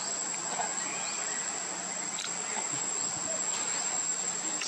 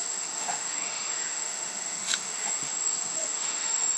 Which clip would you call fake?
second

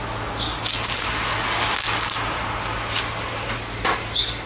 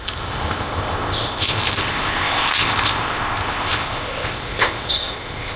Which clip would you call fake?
second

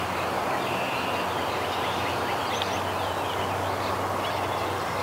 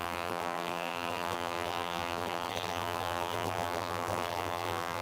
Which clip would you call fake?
second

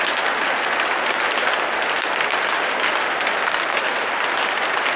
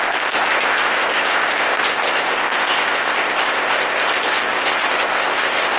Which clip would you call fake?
second